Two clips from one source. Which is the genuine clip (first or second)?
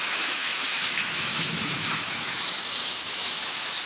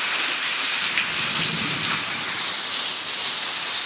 second